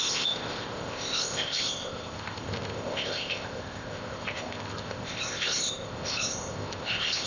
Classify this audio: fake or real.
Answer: fake